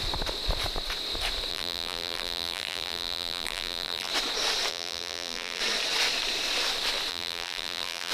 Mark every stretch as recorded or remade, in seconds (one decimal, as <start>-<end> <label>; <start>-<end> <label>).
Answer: 0.0-1.5 recorded; 1.5-4.1 remade; 4.1-4.7 recorded; 4.7-5.6 remade; 5.6-7.1 recorded; 7.1-8.1 remade